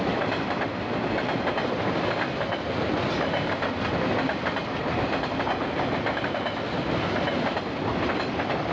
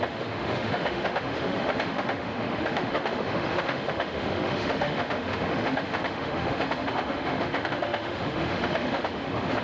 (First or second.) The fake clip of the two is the second